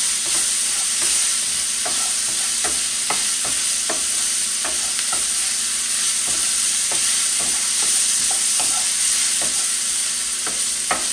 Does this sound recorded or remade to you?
recorded